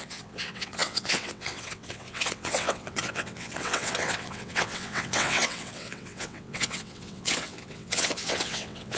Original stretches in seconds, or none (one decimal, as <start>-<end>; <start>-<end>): none